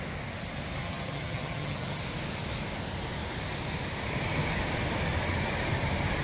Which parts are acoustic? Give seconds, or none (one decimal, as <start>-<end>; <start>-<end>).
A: 0.0-0.8; 2.0-6.2